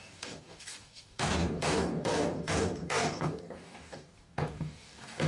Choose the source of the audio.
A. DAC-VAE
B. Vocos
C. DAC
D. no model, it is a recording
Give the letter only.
C